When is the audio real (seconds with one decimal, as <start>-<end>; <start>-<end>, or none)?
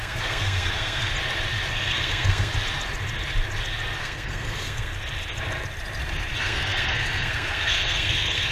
1.1-1.7; 2.5-4.0; 4.9-6.4